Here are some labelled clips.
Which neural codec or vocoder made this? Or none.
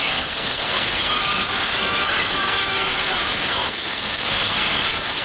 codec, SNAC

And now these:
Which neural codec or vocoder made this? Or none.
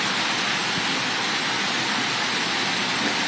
none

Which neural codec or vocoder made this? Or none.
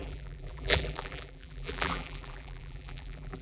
vocoder, BigVGAN v2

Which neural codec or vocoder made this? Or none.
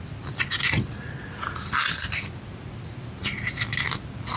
none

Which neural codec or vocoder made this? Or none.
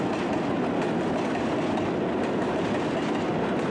none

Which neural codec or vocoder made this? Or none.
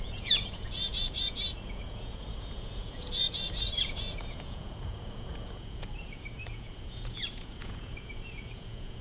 vocoder, Vocos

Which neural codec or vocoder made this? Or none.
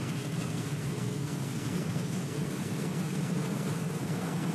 codec, SNAC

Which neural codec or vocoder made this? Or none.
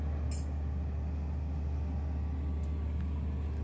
none